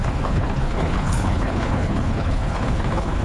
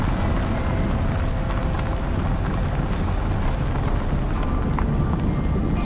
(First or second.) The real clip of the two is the second